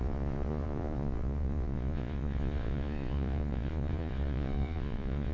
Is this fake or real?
fake